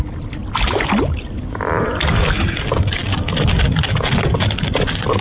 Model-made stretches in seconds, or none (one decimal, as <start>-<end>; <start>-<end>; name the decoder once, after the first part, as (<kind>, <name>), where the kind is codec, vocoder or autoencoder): none